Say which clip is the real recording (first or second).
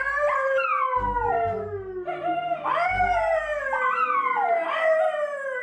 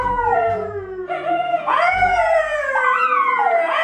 first